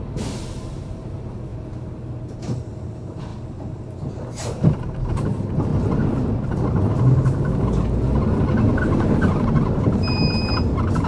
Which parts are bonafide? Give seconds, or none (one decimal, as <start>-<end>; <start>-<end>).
1.5-2.2; 3.3-5.0; 5.7-8.8